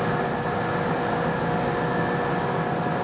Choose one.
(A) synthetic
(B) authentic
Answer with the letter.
B